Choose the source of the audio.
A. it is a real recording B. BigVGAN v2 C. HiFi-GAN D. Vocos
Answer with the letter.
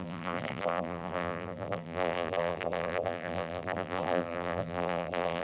B